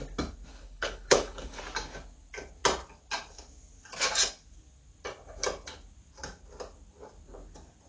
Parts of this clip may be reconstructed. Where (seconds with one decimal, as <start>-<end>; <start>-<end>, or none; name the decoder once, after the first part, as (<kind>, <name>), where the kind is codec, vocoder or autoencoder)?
0.5-1.6 (codec, HILCodec)